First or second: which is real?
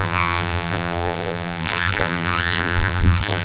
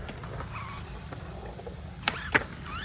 second